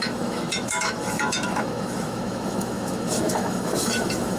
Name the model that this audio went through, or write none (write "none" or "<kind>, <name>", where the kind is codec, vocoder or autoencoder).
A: autoencoder, DAC-VAE